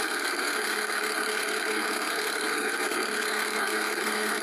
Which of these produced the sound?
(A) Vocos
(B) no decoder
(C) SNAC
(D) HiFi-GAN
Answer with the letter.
C